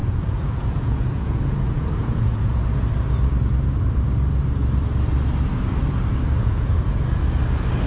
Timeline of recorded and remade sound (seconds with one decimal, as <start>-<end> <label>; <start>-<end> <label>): 0.0-2.6 remade; 2.6-6.4 recorded; 6.4-7.2 remade; 7.2-7.9 recorded

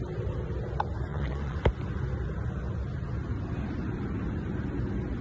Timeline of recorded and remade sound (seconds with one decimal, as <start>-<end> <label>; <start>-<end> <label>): 0.0-1.1 recorded; 1.1-1.6 remade; 1.6-5.2 recorded

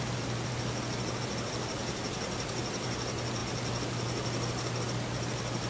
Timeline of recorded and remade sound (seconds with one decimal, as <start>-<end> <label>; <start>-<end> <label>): 0.0-5.7 recorded

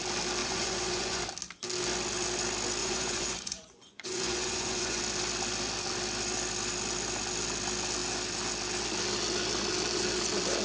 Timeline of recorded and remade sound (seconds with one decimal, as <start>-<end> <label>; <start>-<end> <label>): 0.0-0.4 recorded; 0.4-1.2 remade; 1.2-2.8 recorded; 2.8-5.0 remade; 5.0-10.6 recorded

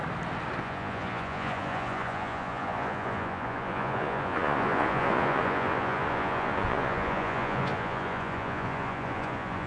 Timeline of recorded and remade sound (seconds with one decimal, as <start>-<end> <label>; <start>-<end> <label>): 0.0-0.6 recorded; 0.6-9.7 remade